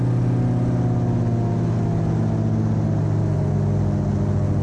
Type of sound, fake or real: real